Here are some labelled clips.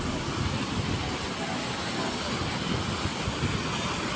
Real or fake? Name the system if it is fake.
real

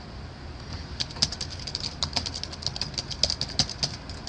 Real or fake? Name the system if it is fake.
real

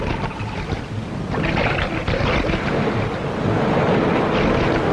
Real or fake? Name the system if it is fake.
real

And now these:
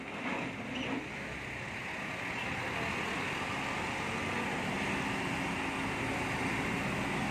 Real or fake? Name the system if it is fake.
real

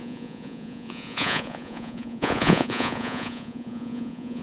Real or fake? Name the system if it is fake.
fake, vocoder, Vocos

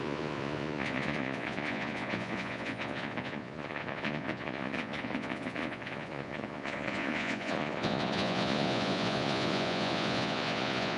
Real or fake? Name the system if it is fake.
fake, vocoder, Vocos